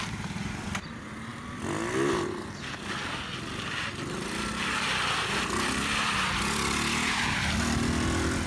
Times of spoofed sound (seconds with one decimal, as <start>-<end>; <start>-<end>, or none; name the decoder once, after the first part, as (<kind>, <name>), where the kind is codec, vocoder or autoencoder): none